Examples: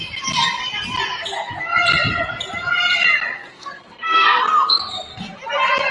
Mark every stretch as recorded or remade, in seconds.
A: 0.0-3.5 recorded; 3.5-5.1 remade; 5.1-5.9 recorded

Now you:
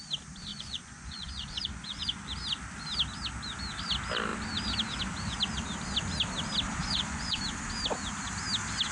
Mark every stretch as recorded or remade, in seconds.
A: 0.0-0.5 recorded; 0.5-2.3 remade; 2.3-6.8 recorded; 6.8-7.4 remade; 7.4-8.9 recorded

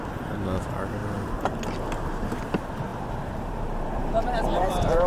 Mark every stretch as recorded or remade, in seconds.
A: 0.0-2.9 recorded; 2.9-5.1 remade

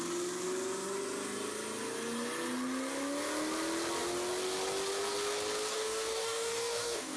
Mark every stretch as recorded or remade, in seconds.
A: 0.0-5.7 recorded; 5.7-7.2 remade

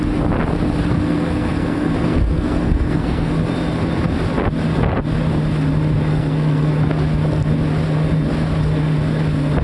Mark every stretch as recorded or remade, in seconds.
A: 0.0-0.9 recorded; 0.9-3.3 remade; 3.3-6.1 recorded; 6.1-6.7 remade; 6.7-9.6 recorded

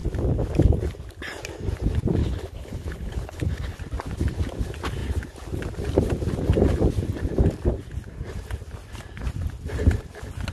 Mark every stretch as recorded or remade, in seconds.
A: 0.0-2.2 recorded; 2.2-3.8 remade; 3.8-10.5 recorded

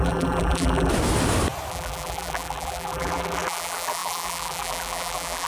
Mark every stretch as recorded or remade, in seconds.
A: 0.0-0.9 remade; 0.9-1.7 recorded; 1.7-5.5 remade